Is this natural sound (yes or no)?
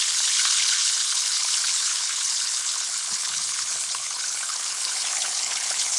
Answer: no